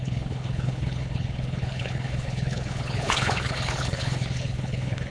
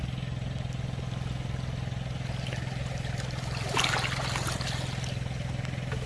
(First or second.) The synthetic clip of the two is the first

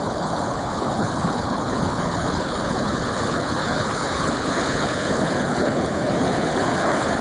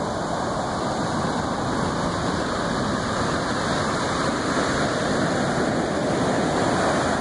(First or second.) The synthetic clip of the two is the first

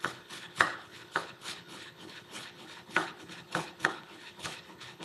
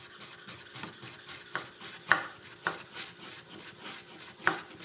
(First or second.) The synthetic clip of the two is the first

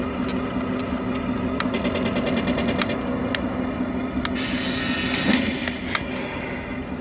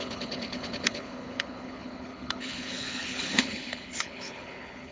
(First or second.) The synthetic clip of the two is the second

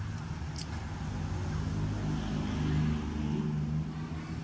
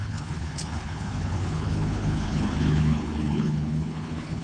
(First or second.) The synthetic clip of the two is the second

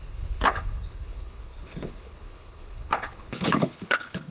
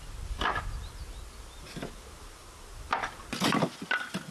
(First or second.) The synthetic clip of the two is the first